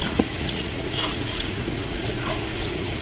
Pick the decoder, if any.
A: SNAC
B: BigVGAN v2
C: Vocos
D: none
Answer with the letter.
C